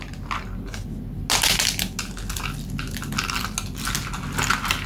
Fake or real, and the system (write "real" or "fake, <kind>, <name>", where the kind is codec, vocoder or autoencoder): real